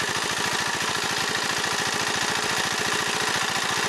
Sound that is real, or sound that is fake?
real